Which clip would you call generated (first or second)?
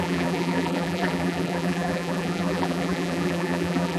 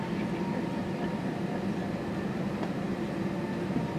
first